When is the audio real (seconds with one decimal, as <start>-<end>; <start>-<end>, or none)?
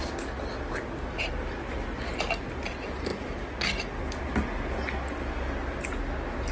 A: 0.0-6.5